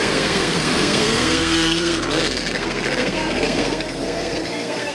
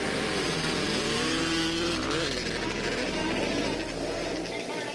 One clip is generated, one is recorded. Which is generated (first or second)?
first